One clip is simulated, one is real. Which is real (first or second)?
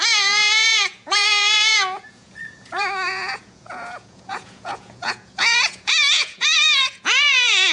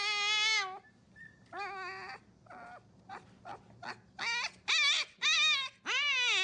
second